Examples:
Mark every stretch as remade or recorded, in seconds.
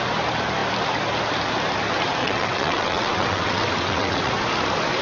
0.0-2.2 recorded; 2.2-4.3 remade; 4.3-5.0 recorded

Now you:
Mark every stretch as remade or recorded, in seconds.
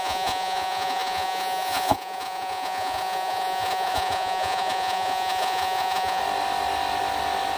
0.0-6.2 remade; 6.2-7.6 recorded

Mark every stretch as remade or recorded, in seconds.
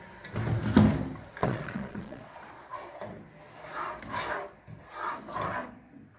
0.0-1.4 recorded; 1.4-2.7 remade; 2.7-6.2 recorded